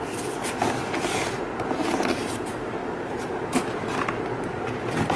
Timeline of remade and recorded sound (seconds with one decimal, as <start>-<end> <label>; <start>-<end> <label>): 0.0-1.8 recorded; 1.8-2.3 remade; 2.3-5.2 recorded